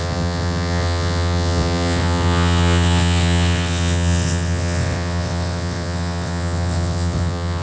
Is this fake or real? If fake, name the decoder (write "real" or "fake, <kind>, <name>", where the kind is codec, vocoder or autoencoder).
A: fake, vocoder, WaveNeXt